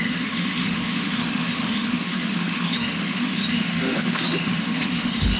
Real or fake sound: fake